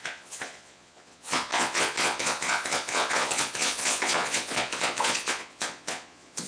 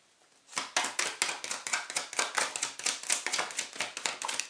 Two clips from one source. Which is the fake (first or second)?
first